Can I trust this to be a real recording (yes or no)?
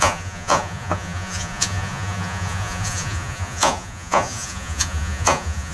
no